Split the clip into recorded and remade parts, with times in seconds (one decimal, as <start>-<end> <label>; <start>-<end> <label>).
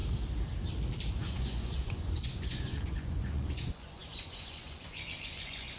0.0-1.1 recorded; 1.1-5.8 remade